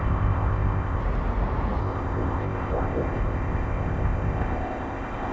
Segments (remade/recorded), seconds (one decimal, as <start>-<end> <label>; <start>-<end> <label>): 0.0-1.0 remade; 1.0-1.8 recorded; 1.8-5.3 remade

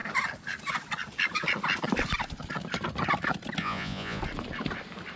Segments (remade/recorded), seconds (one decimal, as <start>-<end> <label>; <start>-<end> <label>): 0.0-3.6 recorded; 3.6-4.2 remade; 4.2-5.2 recorded

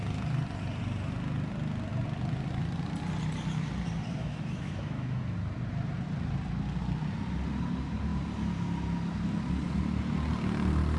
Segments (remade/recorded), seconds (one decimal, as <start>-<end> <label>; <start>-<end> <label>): 0.0-4.2 recorded; 4.2-5.2 remade; 5.2-11.0 recorded

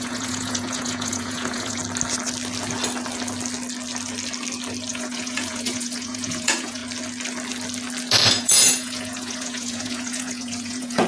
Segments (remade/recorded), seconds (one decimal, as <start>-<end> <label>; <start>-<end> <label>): 0.0-1.8 remade; 1.8-4.9 recorded; 4.9-6.8 remade; 6.8-8.3 recorded; 8.3-11.1 remade